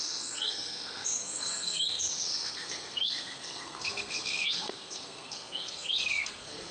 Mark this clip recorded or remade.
remade